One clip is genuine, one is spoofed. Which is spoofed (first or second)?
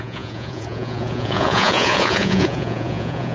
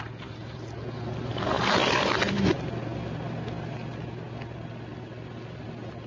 first